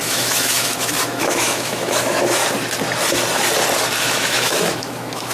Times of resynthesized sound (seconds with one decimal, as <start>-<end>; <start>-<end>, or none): 0.0-2.4; 4.0-5.3